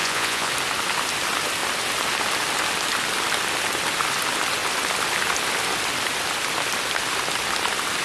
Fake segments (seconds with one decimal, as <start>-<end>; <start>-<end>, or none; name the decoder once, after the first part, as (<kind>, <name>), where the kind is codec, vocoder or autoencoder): 0.0-0.5 (vocoder, Vocos)